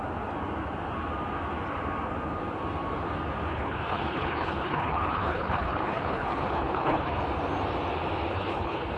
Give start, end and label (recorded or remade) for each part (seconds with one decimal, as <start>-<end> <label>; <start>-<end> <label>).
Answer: 0.0-3.5 recorded; 3.5-7.2 remade; 7.2-8.3 recorded; 8.3-9.0 remade